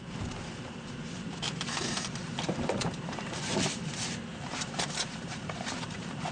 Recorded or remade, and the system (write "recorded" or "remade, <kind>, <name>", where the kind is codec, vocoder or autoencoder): remade, vocoder, BigVGAN v2